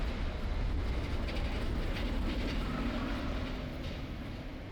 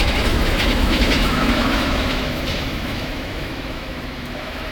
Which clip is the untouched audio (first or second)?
first